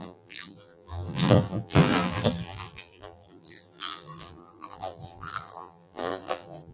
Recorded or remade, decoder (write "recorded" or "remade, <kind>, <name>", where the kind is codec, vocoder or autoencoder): remade, vocoder, BigVGAN v2